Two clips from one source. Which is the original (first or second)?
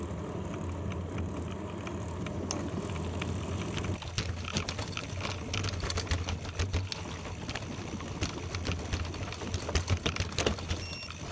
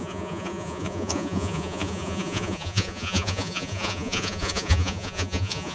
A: first